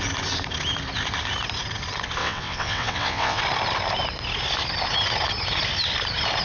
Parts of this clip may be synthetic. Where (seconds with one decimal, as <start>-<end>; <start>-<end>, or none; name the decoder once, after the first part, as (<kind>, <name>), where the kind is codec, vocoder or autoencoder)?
2.2-3.4 (vocoder, WaveNeXt)